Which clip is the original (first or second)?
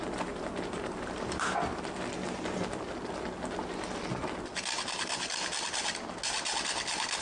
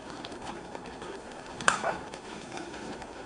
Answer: first